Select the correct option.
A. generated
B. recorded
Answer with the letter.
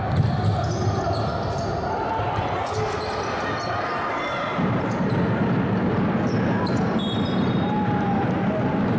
B